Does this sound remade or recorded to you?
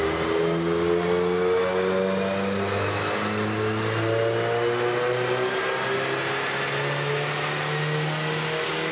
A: recorded